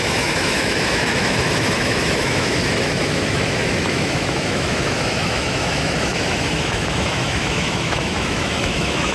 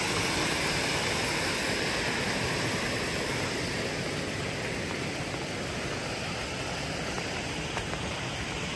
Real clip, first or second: second